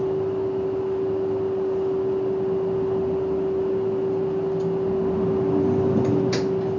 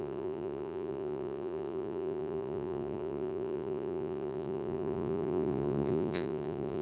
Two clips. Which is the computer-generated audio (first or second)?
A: second